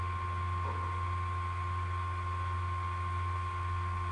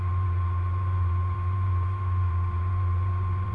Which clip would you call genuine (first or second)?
first